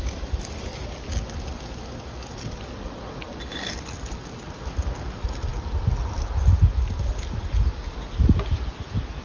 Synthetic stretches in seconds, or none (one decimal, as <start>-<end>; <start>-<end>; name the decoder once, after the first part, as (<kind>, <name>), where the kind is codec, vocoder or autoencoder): none